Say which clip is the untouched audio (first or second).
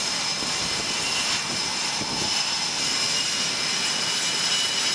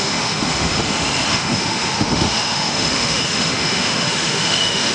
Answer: first